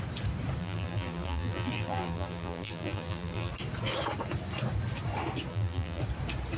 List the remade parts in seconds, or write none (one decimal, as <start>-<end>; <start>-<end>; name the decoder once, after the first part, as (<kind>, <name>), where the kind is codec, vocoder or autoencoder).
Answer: 0.6-3.5 (vocoder, BigVGAN v2); 5.5-6.0